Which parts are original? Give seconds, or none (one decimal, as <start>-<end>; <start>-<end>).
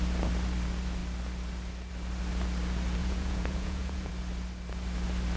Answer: 0.0-3.0; 4.1-5.4